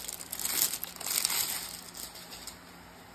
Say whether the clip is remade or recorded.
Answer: recorded